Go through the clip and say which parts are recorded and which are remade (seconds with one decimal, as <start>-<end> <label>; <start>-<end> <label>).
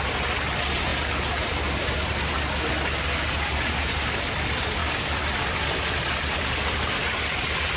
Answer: 0.0-4.8 recorded; 4.8-6.4 remade; 6.4-7.8 recorded